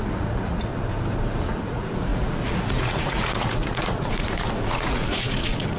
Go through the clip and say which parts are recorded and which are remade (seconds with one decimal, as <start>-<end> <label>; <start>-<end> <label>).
0.0-0.7 remade; 0.7-1.4 recorded; 1.4-5.8 remade